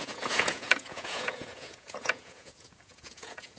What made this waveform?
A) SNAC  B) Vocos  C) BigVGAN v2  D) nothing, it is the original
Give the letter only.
B